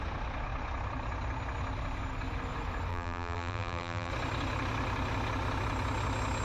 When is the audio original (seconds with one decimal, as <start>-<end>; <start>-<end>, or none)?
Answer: 0.0-2.9; 4.1-6.4